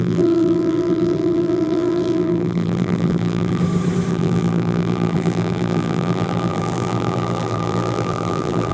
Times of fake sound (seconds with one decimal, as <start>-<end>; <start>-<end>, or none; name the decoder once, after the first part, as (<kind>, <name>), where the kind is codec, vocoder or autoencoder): 0.0-3.6 (vocoder, BigVGAN v2); 4.1-8.7